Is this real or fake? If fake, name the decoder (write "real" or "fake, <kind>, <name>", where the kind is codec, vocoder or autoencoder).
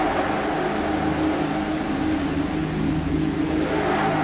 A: real